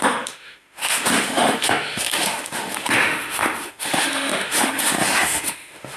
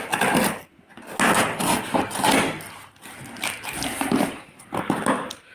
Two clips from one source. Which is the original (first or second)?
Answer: second